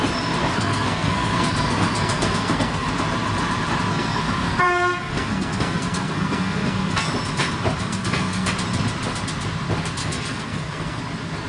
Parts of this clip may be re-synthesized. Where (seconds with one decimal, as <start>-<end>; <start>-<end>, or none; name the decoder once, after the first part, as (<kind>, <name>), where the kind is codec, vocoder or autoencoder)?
0.4-2.9 (codec, SNAC); 3.9-7.1; 7.8-8.5; 10.0-11.0